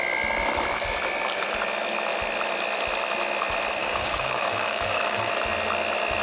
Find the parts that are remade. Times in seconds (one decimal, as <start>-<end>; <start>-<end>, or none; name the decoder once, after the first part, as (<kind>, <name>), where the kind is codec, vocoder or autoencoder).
3.8-5.3 (codec, DAC)